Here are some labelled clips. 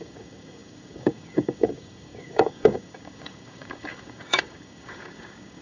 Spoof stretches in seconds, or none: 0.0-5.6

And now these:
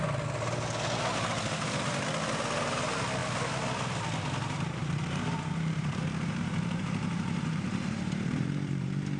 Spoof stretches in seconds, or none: 4.8-9.2

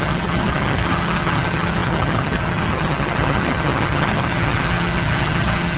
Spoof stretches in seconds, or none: 0.0-5.8

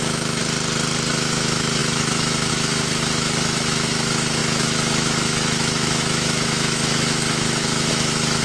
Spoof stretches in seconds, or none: 0.0-0.4; 1.1-8.4

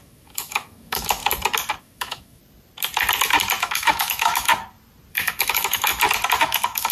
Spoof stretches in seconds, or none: 0.0-1.2; 1.8-2.4; 3.6-4.5; 5.1-5.9; 6.4-6.9

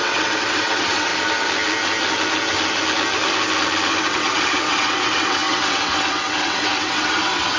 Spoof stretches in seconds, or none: 0.0-1.1; 4.0-7.6

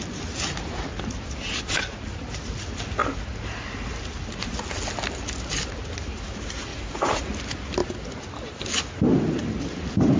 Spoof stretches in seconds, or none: 6.7-7.3

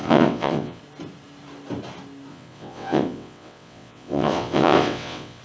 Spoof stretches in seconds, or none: 0.0-0.8; 2.3-5.4